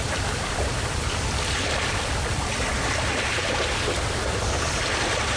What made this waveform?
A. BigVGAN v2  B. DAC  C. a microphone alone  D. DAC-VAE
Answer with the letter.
A